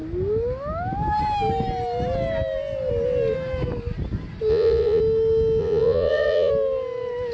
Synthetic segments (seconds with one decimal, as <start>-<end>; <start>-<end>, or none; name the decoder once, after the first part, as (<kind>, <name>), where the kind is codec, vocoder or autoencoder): 4.5-5.0 (vocoder, Vocos); 5.6-6.5